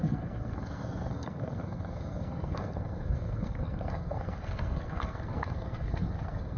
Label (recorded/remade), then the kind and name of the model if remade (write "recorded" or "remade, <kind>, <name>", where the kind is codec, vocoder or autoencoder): remade, codec, SNAC